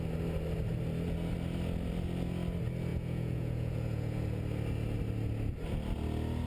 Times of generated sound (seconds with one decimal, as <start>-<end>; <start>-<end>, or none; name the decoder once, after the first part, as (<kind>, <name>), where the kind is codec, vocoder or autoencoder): 2.9-4.4 (vocoder, Vocos)